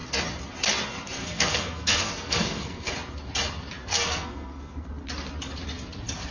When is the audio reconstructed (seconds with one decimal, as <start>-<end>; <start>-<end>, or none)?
1.2-2.9; 3.8-4.9